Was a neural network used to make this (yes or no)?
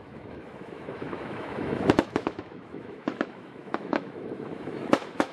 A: yes